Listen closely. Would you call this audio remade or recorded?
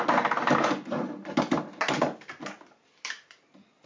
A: recorded